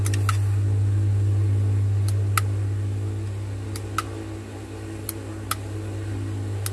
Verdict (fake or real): real